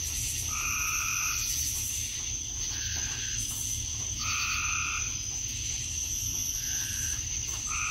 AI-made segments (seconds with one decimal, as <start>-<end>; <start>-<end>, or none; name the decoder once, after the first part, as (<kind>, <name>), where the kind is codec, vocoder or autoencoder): 0.0-1.1 (vocoder, BigVGAN v2); 5.7-6.4; 6.9-7.9